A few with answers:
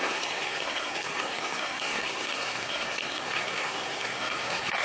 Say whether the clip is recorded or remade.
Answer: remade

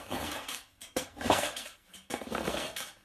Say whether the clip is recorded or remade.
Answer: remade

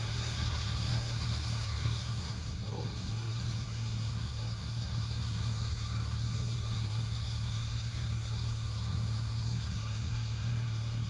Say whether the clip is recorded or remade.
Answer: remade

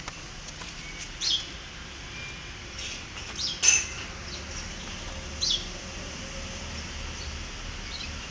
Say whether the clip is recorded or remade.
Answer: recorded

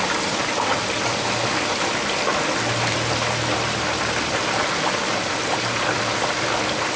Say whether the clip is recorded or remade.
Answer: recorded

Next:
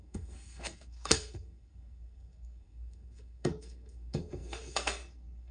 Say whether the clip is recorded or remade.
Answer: remade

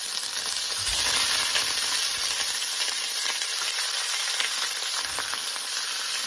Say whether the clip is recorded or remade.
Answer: recorded